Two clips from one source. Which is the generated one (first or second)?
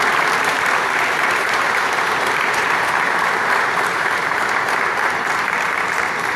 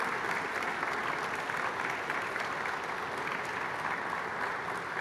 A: first